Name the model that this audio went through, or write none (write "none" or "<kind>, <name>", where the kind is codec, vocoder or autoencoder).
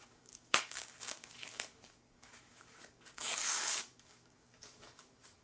codec, DAC